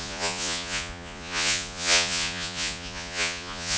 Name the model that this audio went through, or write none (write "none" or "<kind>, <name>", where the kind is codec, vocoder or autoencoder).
vocoder, Vocos